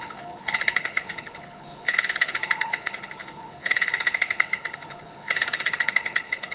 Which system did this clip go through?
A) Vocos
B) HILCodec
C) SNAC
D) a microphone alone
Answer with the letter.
B